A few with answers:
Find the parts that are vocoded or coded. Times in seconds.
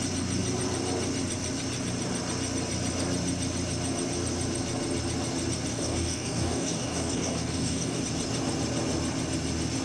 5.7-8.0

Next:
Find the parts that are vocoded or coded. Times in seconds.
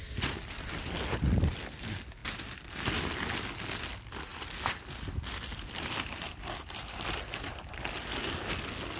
none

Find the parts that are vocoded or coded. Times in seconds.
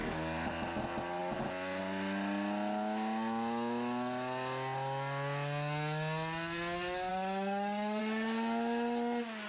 7.1-8.0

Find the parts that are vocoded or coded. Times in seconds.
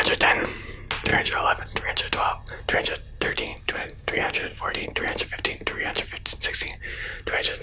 3.5-5.0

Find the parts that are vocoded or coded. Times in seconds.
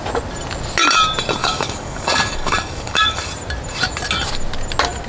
1.4-3.2